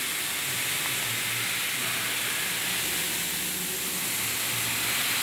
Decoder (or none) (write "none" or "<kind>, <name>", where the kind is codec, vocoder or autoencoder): none